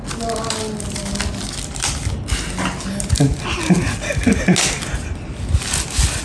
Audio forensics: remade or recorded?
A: recorded